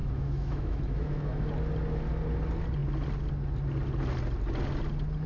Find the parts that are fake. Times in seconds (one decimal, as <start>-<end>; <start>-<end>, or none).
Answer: 0.0-1.5